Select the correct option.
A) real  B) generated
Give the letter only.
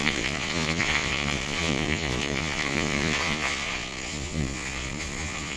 B